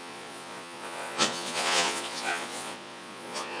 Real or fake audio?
fake